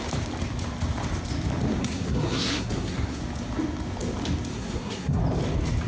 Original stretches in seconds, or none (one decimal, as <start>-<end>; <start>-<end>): 0.0-1.8; 3.2-4.5; 5.2-5.9